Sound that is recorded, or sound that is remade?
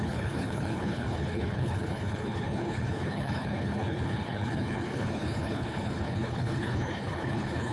remade